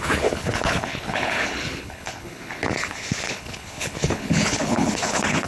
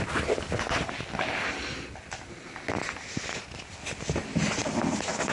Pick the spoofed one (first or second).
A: first